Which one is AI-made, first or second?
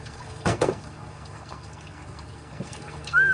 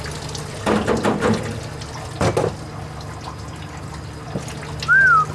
first